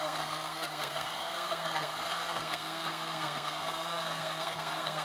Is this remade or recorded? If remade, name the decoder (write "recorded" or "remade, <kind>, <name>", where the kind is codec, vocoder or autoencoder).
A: remade, codec, SNAC